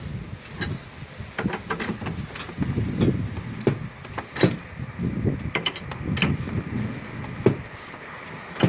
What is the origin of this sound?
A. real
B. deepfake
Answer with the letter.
A